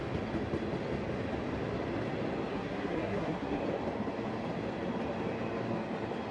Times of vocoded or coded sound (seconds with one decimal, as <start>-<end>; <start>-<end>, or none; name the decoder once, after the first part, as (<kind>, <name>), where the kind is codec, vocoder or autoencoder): 2.5-3.6 (codec, SNAC)